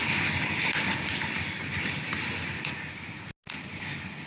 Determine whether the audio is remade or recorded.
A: recorded